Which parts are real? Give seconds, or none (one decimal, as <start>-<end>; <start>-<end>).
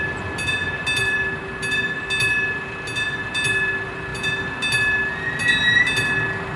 0.0-6.6